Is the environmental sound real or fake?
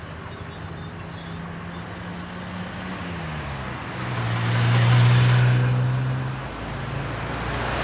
real